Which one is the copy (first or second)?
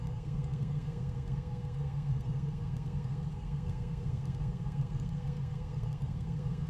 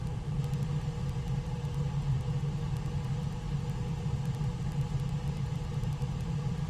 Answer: first